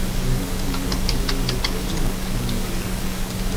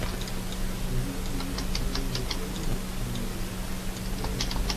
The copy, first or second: first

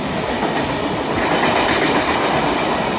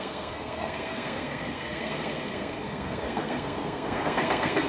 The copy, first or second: second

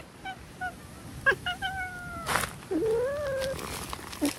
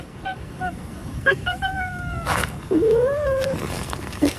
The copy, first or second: second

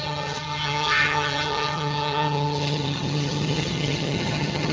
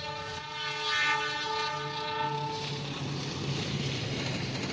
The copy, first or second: first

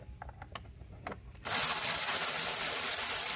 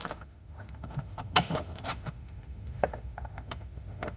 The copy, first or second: second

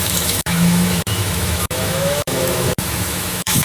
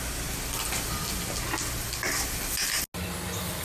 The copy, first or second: first